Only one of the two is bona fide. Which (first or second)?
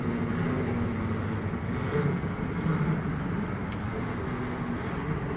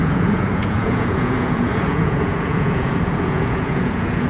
first